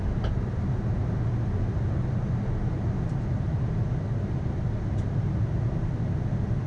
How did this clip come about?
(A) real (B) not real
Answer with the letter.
A